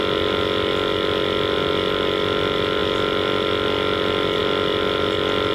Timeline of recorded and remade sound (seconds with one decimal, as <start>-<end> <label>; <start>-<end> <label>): 0.0-5.5 recorded